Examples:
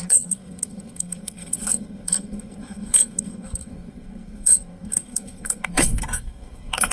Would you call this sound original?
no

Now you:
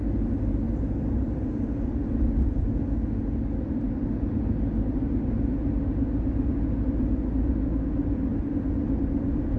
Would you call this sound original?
yes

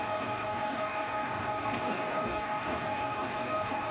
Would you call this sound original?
no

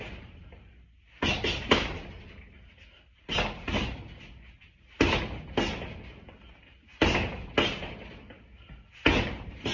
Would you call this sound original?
yes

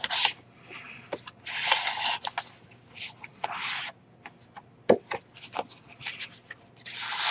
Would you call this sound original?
yes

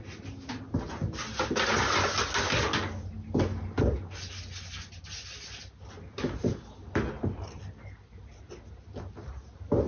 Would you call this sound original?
yes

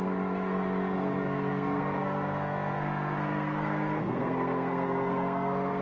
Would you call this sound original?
no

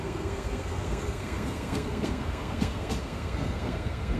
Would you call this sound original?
no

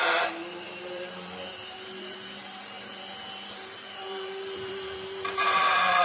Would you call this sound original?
no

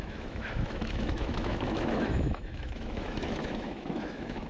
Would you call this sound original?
no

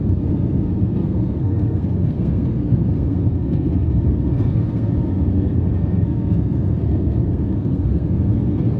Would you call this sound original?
no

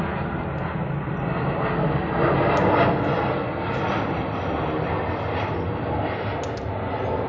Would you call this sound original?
yes